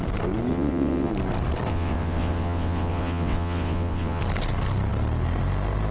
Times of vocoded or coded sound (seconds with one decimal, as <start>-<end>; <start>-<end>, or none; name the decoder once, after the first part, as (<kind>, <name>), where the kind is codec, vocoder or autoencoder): 0.5-1.1 (vocoder, WaveNeXt); 1.7-4.2